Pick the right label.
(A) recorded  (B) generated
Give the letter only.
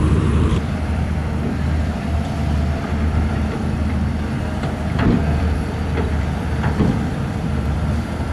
B